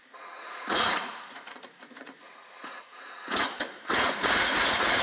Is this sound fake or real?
fake